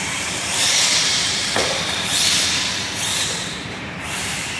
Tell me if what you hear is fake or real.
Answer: fake